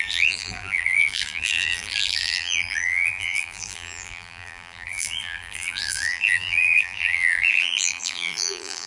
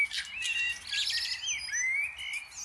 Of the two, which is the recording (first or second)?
second